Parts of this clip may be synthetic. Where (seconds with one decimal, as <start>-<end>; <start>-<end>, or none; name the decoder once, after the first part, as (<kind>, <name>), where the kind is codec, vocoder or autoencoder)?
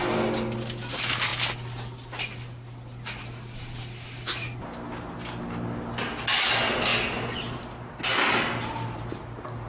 none